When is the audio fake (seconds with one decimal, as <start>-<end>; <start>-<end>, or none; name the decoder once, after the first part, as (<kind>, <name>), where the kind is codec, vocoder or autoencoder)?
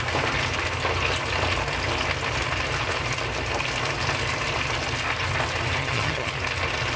5.8-6.3 (vocoder, HiFi-GAN)